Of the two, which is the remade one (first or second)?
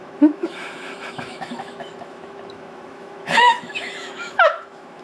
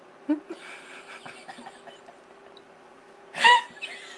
first